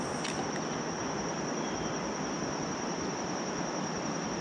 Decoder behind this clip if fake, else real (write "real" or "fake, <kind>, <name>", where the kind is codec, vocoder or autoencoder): real